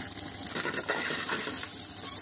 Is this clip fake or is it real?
real